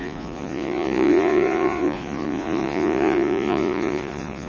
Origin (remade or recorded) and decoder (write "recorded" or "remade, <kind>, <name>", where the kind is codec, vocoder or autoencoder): remade, vocoder, Vocos